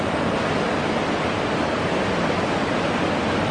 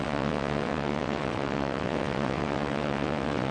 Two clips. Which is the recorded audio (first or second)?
first